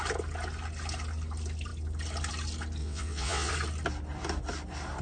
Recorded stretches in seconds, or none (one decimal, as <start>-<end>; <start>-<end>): 0.0-2.8; 3.5-5.0